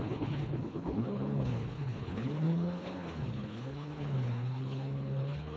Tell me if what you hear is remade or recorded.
remade